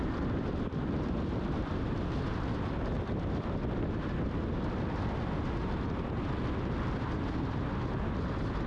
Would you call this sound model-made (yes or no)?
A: no